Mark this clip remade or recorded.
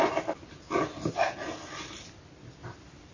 recorded